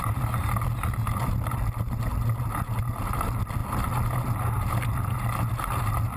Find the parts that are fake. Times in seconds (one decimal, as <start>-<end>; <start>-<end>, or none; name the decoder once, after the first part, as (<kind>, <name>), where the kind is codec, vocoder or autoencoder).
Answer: none